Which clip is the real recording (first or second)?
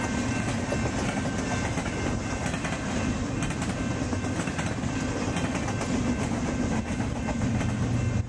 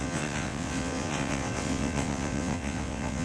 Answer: first